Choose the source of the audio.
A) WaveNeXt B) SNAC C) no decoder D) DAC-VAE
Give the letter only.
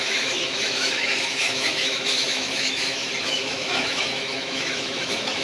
D